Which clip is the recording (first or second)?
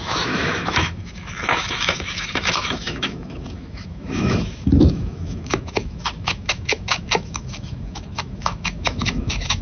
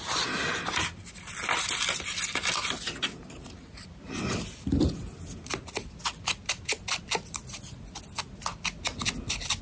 second